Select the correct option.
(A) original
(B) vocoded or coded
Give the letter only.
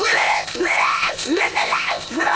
B